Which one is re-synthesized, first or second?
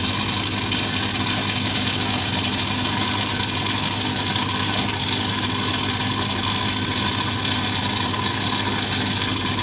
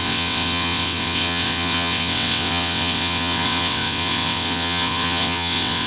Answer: second